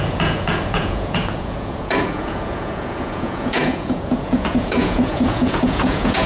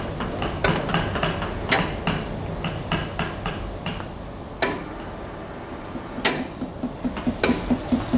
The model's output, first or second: first